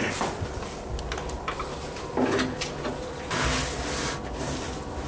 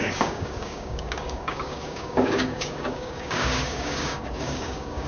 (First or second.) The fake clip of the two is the second